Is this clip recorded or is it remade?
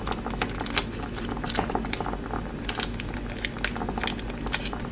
recorded